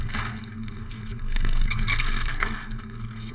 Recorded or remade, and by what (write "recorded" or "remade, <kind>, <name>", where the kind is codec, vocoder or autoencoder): remade, codec, SNAC